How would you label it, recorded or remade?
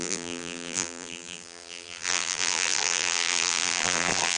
remade